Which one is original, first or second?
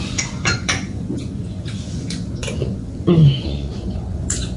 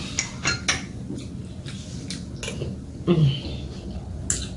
second